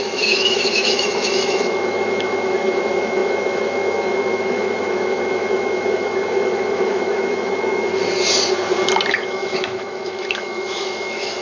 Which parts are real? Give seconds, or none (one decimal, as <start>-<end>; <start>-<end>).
7.9-9.1